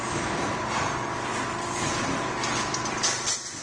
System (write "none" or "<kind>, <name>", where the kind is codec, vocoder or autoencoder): none